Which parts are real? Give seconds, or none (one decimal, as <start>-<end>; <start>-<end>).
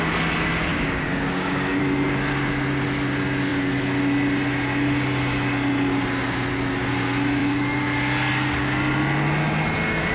0.0-0.7; 1.8-10.1